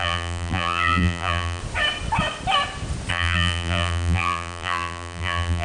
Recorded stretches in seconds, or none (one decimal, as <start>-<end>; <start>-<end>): 1.6-3.1